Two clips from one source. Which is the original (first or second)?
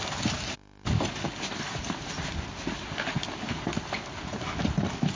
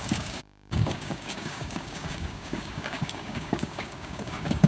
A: first